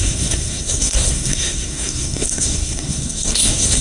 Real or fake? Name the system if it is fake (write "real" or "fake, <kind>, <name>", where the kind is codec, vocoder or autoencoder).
fake, codec, SNAC